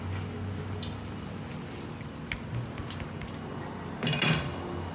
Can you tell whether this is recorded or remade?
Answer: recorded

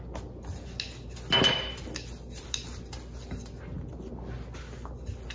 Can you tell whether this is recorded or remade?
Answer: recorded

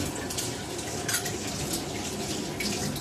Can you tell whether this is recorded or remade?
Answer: recorded